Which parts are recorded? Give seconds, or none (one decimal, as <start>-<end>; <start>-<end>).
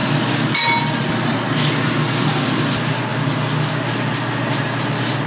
0.0-5.3